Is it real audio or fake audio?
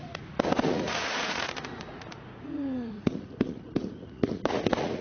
fake